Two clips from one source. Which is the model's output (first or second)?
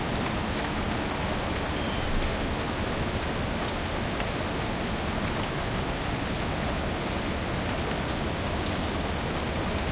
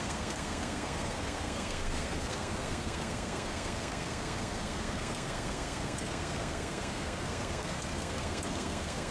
second